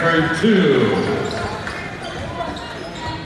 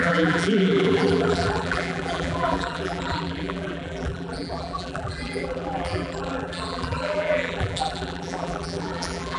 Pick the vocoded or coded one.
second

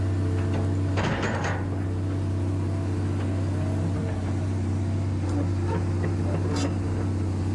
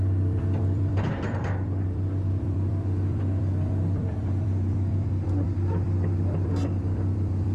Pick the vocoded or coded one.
second